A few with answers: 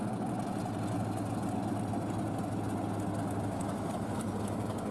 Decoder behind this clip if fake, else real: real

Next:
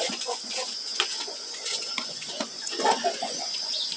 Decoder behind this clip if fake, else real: fake, vocoder, Vocos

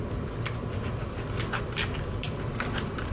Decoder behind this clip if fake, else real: real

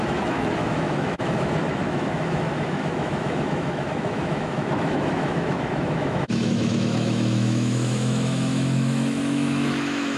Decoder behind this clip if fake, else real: fake, autoencoder, DAC-VAE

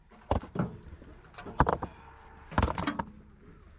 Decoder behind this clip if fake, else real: real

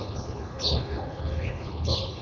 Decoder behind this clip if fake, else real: fake, codec, HILCodec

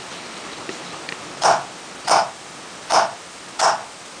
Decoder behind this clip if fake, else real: real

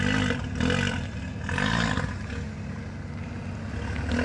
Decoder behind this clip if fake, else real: real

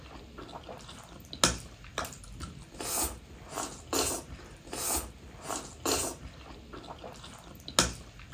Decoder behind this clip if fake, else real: real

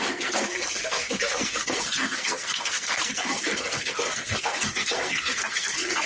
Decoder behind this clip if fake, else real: fake, codec, SNAC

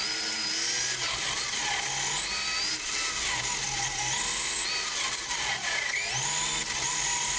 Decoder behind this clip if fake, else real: real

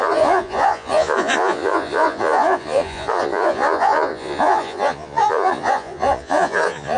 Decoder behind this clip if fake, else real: fake, vocoder, Vocos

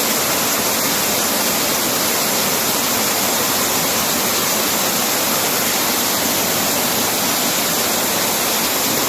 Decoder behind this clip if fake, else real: real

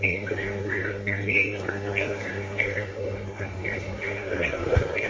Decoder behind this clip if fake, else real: fake, codec, SNAC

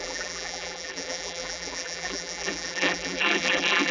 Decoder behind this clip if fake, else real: fake, vocoder, BigVGAN v2